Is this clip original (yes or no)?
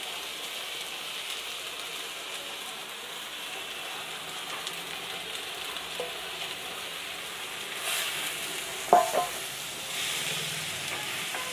yes